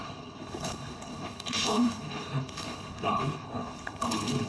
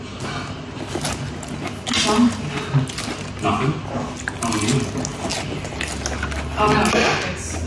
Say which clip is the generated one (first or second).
first